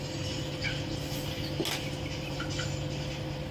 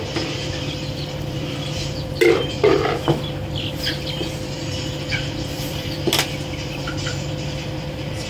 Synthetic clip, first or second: second